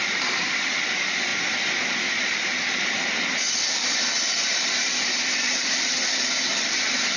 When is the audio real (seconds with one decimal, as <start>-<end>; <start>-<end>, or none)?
1.3-2.1